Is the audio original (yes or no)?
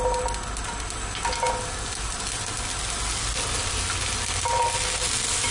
yes